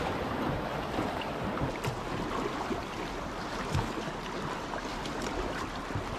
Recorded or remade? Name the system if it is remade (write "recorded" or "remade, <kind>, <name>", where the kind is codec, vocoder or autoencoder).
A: remade, vocoder, BigVGAN v2